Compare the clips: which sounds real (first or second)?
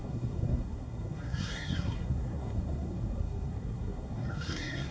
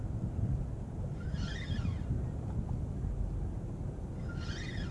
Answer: second